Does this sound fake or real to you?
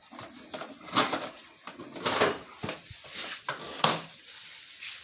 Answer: real